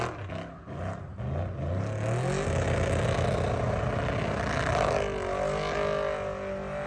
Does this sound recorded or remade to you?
recorded